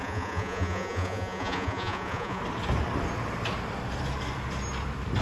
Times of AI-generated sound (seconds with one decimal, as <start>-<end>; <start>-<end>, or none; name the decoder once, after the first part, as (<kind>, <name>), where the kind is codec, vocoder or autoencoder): 0.0-2.4 (vocoder, Vocos)